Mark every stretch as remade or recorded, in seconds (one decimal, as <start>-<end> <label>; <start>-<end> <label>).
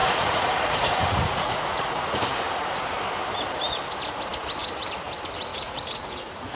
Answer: 0.0-2.2 remade; 2.2-5.5 recorded; 5.5-6.6 remade